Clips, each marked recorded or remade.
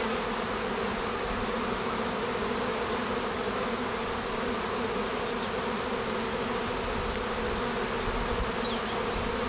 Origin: recorded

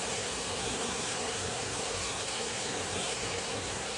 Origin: remade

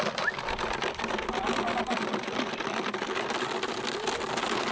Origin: remade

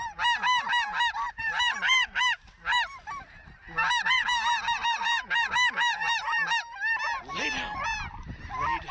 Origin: recorded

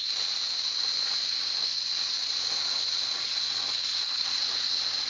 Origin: recorded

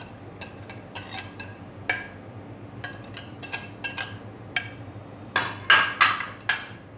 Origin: recorded